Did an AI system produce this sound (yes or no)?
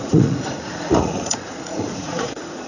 yes